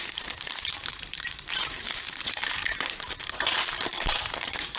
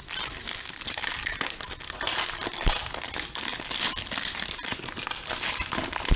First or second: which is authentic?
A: second